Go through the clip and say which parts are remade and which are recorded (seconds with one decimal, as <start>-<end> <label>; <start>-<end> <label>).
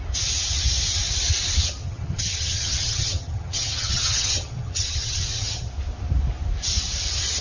0.0-1.8 recorded; 1.8-5.7 remade; 5.7-7.4 recorded